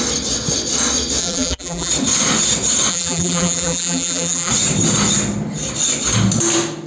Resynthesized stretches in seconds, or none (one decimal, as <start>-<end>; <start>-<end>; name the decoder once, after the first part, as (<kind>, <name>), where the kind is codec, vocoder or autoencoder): 1.2-1.9 (vocoder, BigVGAN v2); 2.9-4.5

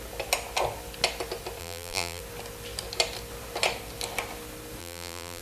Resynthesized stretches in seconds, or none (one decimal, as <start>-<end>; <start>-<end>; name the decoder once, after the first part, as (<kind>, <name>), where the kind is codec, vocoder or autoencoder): 1.6-2.2 (vocoder, BigVGAN v2); 4.8-5.4